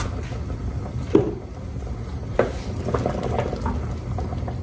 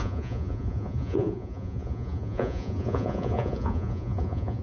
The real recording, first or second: first